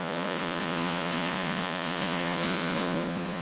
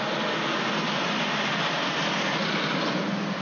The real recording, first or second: second